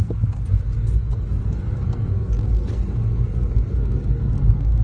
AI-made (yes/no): yes